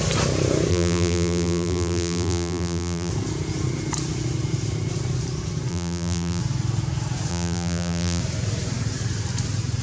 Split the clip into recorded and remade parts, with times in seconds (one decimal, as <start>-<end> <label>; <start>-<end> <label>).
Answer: 0.0-0.7 recorded; 0.7-3.1 remade; 3.1-5.7 recorded; 5.7-6.4 remade; 6.4-7.3 recorded; 7.3-8.2 remade; 8.2-9.8 recorded